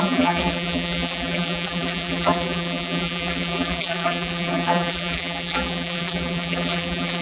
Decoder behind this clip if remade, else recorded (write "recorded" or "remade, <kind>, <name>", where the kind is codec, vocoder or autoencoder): remade, vocoder, BigVGAN v2